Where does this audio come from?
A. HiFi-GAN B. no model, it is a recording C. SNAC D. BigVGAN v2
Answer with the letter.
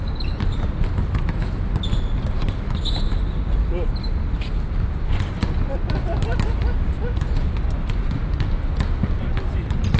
B